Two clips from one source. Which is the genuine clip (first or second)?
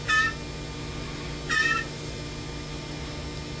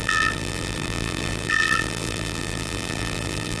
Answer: first